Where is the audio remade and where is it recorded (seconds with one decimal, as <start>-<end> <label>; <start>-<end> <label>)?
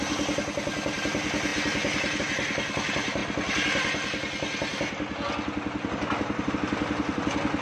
0.0-7.6 recorded